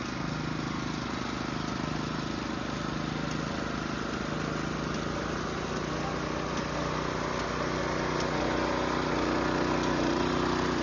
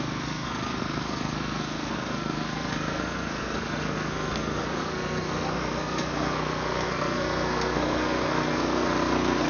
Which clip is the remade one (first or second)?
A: second